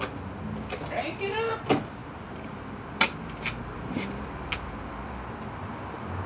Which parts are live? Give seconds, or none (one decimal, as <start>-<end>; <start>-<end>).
0.0-6.3